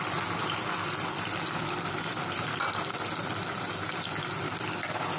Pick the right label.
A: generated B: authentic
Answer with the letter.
B